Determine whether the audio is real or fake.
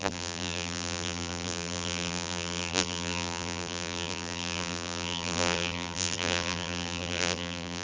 fake